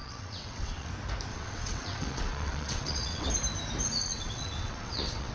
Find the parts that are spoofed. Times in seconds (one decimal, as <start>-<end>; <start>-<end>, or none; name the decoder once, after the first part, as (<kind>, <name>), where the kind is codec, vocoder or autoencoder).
0.0-0.9 (vocoder, WaveNeXt); 1.3-3.3; 4.0-5.3

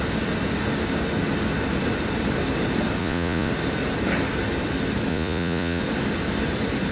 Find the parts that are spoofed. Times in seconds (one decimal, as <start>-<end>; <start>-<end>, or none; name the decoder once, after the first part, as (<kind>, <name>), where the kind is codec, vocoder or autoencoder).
3.0-3.5 (vocoder, Vocos); 5.1-5.8

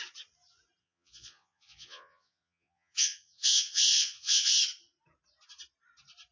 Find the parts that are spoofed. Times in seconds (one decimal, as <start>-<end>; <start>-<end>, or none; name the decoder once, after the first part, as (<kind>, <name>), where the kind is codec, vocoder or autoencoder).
0.8-4.6 (vocoder, Vocos)

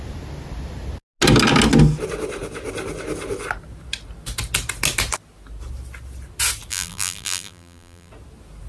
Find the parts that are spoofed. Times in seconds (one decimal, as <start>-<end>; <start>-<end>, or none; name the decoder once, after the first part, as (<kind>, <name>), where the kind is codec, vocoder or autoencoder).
6.7-8.1 (vocoder, BigVGAN v2)

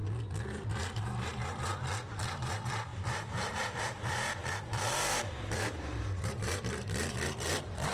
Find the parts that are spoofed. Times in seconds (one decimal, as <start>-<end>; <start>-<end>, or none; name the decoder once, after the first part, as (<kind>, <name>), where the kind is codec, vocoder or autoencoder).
0.5-7.9 (vocoder, BigVGAN v2)